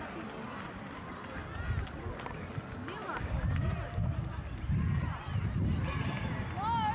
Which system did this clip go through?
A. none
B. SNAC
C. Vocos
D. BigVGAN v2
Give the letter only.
A